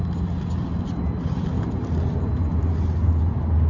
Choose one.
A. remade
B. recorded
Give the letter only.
B